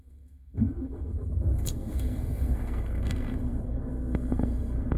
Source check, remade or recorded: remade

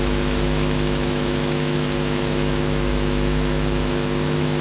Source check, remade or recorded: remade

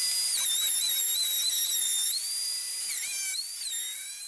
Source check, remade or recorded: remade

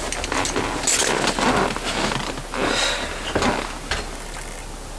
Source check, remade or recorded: recorded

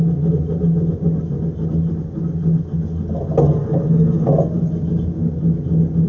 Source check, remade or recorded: recorded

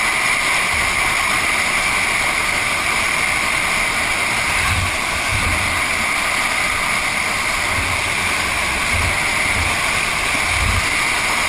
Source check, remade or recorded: recorded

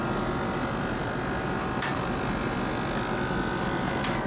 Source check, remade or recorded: recorded